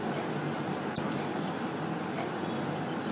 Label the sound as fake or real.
real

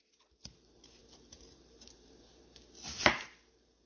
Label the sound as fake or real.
fake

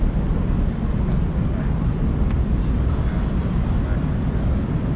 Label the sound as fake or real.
fake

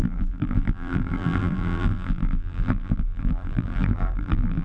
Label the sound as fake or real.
fake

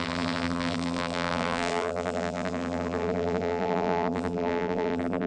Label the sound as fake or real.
fake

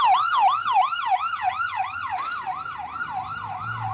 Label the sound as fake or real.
fake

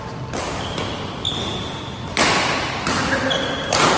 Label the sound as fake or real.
real